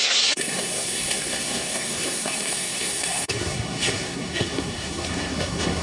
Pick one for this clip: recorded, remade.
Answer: remade